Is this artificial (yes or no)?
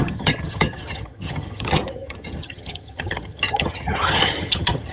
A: yes